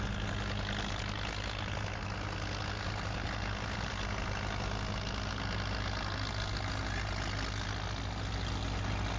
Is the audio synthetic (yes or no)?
no